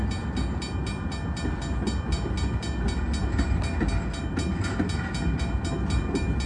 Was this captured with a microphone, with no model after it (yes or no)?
yes